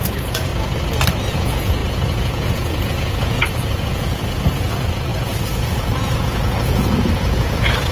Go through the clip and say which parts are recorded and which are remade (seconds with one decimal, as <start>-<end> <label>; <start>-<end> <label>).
0.0-0.5 remade; 0.5-1.3 recorded; 1.3-7.9 remade